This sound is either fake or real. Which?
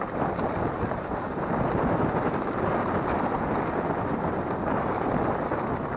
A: real